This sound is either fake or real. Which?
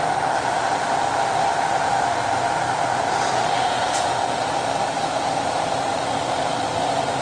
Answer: real